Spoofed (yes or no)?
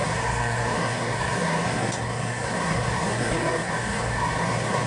yes